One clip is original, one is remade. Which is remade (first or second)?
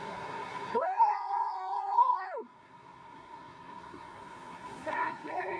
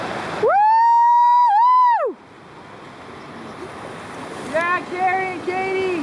first